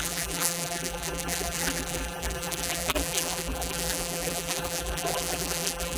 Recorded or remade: remade